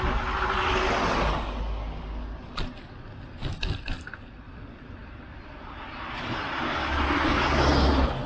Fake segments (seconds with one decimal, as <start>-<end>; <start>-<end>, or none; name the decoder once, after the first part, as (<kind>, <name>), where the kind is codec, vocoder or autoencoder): none